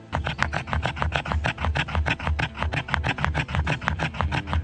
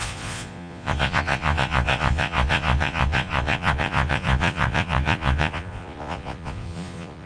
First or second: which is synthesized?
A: second